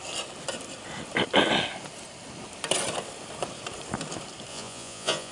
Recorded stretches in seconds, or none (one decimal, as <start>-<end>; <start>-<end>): 0.0-4.5